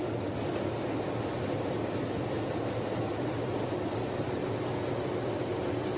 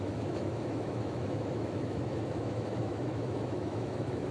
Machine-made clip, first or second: second